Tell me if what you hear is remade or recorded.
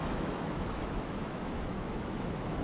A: remade